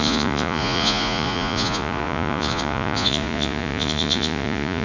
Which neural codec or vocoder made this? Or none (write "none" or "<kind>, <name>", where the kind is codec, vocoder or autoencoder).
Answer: vocoder, Vocos